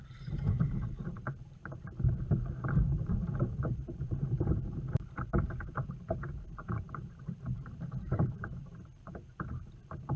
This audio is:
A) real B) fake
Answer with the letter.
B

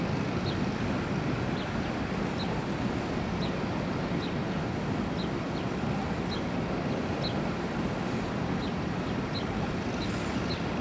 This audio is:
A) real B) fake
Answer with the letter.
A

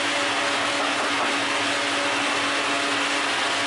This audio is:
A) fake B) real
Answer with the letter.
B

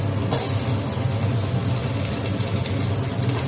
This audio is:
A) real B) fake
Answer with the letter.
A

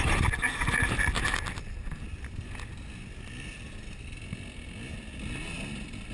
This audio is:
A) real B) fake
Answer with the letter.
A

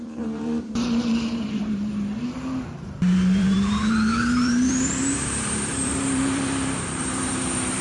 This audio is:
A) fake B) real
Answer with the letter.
A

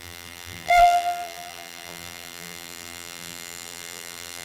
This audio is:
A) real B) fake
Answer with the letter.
B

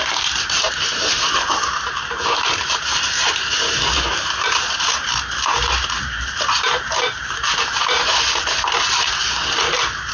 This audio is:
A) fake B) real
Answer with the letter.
A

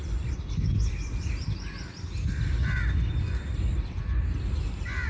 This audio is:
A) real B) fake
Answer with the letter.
B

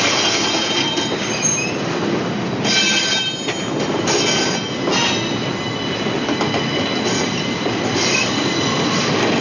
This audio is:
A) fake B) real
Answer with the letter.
B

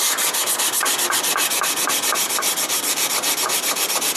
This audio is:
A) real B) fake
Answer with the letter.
B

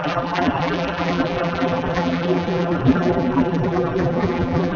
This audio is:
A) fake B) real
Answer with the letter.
A